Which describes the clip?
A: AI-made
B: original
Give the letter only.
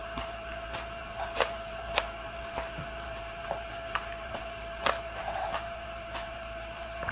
A